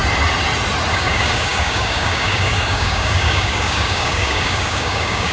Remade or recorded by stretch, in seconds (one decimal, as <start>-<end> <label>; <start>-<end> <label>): 0.0-0.9 recorded; 0.9-5.3 remade